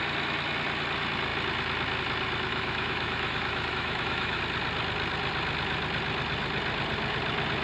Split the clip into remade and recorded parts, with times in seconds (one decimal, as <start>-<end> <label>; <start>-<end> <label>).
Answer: 0.0-2.5 recorded; 2.5-4.4 remade; 4.4-7.6 recorded